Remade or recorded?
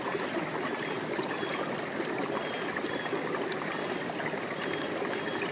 recorded